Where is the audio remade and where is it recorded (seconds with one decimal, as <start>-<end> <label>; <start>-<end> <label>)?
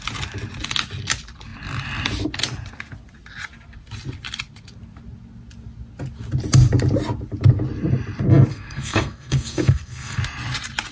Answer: 0.0-8.5 recorded; 8.5-10.2 remade; 10.2-10.9 recorded